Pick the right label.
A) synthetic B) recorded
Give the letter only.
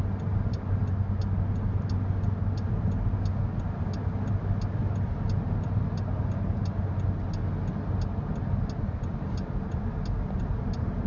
B